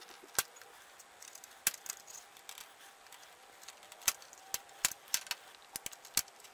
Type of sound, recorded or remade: recorded